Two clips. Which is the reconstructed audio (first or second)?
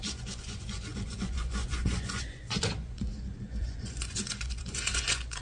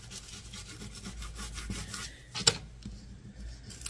first